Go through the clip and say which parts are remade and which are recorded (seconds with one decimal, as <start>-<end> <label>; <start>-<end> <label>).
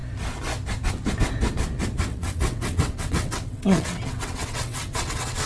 0.0-2.1 recorded; 2.1-5.5 remade